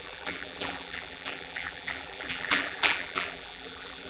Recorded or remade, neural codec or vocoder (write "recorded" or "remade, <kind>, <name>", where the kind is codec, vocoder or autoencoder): remade, vocoder, BigVGAN v2